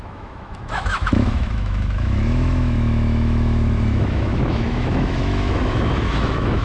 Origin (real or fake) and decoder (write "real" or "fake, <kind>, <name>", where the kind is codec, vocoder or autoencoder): fake, autoencoder, DAC-VAE